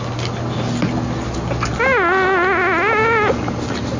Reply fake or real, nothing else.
real